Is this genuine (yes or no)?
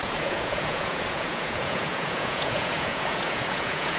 no